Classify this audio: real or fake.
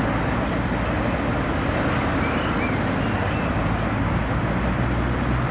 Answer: real